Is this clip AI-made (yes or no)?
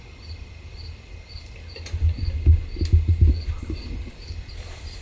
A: no